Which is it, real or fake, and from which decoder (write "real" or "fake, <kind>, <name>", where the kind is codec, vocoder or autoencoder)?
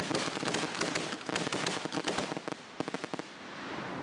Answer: real